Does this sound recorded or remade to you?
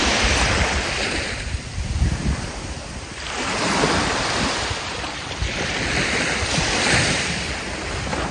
remade